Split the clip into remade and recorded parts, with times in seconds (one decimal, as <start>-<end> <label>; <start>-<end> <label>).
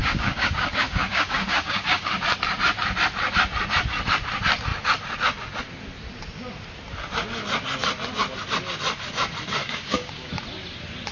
0.0-2.1 remade; 2.1-9.6 recorded; 9.6-10.3 remade; 10.3-11.1 recorded